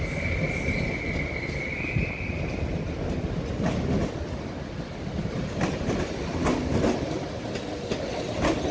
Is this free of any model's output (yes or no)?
yes